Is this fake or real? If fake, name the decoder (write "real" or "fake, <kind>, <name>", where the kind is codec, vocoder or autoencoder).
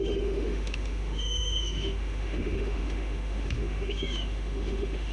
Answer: fake, autoencoder, DAC-VAE